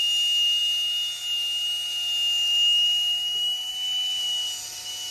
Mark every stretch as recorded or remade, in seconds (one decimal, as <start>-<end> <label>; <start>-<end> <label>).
0.0-5.1 recorded